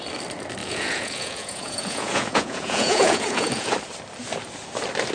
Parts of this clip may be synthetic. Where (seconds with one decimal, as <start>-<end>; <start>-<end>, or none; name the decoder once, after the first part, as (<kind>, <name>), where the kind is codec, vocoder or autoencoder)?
0.6-3.7 (vocoder, Vocos)